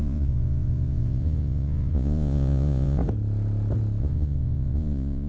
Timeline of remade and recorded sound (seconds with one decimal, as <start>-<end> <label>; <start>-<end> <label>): 0.0-3.0 remade; 3.0-4.0 recorded; 4.0-5.3 remade